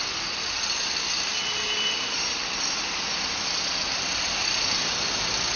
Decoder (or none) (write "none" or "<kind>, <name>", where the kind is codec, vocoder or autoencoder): none